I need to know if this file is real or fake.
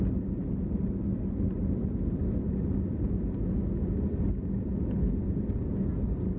real